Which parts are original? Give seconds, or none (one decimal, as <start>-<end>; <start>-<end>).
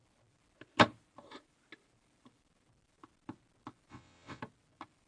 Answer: 0.0-3.9; 4.4-5.1